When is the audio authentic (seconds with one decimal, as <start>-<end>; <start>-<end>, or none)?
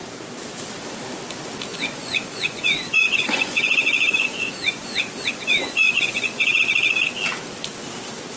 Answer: 0.0-1.7; 6.6-8.4